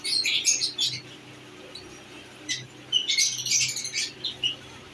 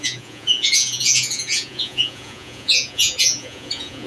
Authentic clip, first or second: first